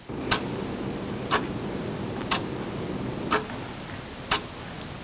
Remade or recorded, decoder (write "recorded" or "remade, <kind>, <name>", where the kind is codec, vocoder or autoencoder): recorded